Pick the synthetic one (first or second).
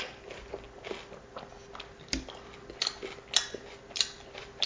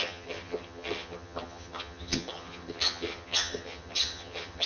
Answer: second